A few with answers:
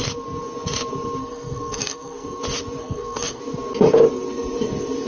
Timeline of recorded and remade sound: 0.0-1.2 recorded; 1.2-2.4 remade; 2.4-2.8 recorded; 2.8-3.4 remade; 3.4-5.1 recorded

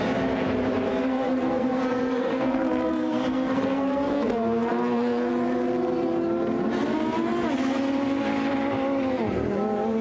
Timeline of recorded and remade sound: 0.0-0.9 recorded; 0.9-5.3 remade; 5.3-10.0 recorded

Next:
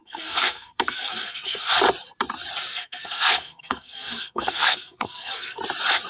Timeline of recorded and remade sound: 0.0-1.8 remade; 1.8-2.7 recorded; 2.7-5.6 remade; 5.6-6.1 recorded

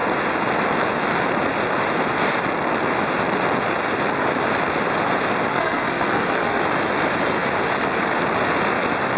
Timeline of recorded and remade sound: 0.0-5.5 recorded; 5.5-6.6 remade; 6.6-9.2 recorded

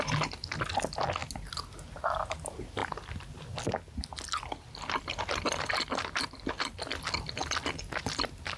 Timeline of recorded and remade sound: 0.0-8.6 recorded

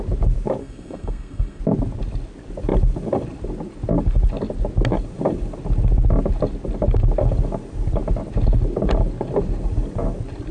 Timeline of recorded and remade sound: 0.0-0.6 recorded; 0.6-1.6 remade; 1.6-10.5 recorded